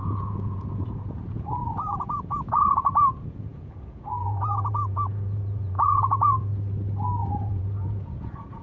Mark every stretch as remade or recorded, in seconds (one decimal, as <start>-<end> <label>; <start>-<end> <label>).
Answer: 0.0-6.5 remade; 6.5-7.3 recorded; 7.3-8.6 remade